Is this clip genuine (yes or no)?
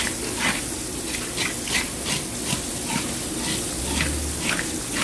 yes